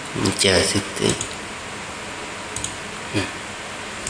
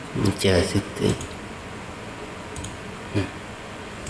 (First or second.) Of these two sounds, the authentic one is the first